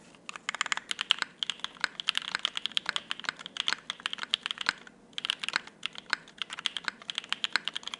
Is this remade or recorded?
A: recorded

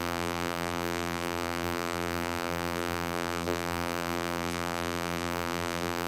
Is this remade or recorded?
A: remade